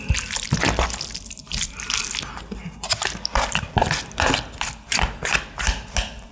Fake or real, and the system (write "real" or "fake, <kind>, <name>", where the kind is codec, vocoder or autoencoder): real